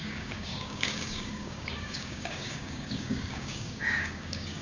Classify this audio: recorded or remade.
remade